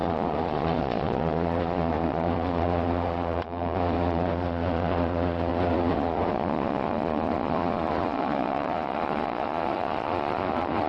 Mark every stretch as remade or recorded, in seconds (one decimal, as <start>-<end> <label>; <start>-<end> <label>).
0.0-10.9 remade